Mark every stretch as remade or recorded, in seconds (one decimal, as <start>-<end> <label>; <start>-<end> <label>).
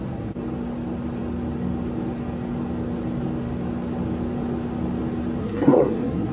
0.0-5.4 recorded; 5.4-6.3 remade